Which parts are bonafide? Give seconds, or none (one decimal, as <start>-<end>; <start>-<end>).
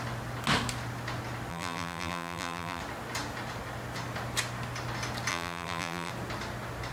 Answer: 0.0-1.5; 2.8-5.3; 6.1-6.9